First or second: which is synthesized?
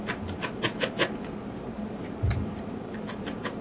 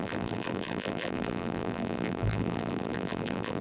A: second